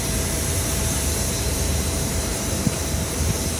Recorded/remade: remade